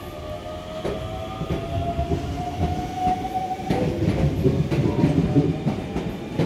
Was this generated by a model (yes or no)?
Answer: no